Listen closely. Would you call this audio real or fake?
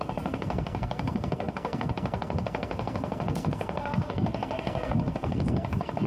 fake